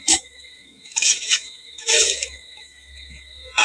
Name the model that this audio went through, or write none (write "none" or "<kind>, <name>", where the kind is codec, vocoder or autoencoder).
autoencoder, DAC-VAE